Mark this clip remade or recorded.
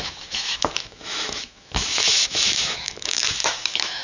remade